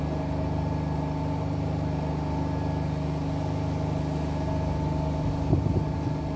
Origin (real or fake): real